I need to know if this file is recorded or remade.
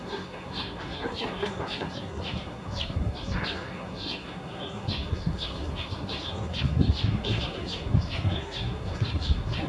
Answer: remade